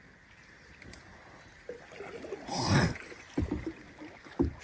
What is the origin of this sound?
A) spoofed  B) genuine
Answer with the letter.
A